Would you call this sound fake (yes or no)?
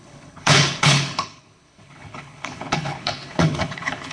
yes